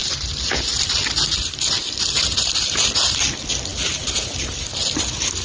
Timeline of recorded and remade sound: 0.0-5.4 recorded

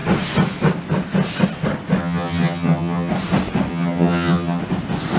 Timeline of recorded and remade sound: 0.0-2.0 recorded; 2.0-3.1 remade; 3.1-3.7 recorded; 3.7-4.6 remade; 4.6-5.2 recorded

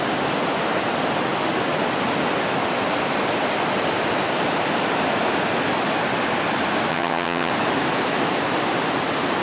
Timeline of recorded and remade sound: 0.0-6.9 recorded; 6.9-7.5 remade; 7.5-9.4 recorded

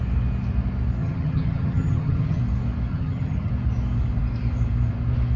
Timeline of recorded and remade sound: 0.0-1.0 recorded; 1.0-2.4 remade; 2.4-2.9 recorded; 2.9-3.5 remade; 3.5-5.4 recorded

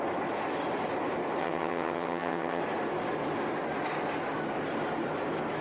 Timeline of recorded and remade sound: 0.0-1.4 recorded; 1.4-2.6 remade; 2.6-5.6 recorded

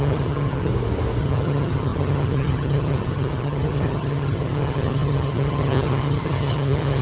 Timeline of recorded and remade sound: 0.0-0.7 remade; 0.7-1.2 recorded; 1.2-7.0 remade